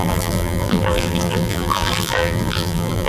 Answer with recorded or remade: remade